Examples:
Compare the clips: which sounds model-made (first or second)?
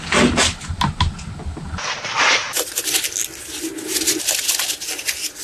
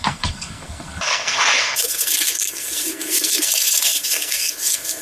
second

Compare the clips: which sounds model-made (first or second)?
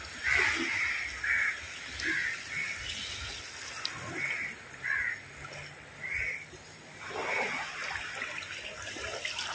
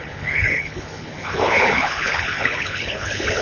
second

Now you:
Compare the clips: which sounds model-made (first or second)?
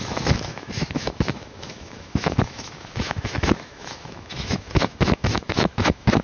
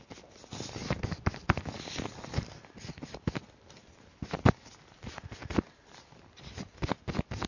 first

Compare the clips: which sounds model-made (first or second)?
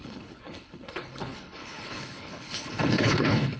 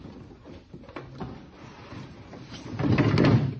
first